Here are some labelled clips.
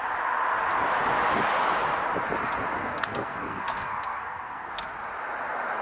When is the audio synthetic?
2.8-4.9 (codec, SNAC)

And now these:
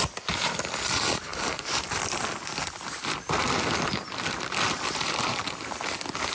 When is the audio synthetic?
none

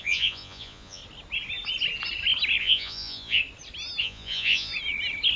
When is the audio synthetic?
0.0-1.0 (vocoder, Vocos); 2.6-3.4; 4.0-4.7